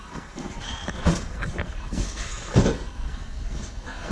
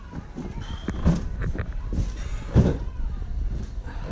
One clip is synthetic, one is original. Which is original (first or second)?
second